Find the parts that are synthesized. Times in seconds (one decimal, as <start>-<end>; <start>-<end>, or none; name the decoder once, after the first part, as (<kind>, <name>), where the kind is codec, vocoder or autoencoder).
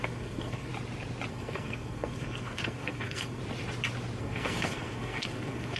0.0-0.7 (codec, SNAC); 1.3-3.4; 4.2-5.8